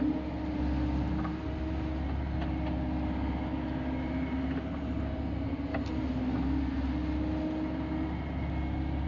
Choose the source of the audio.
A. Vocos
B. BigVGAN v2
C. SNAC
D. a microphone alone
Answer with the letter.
D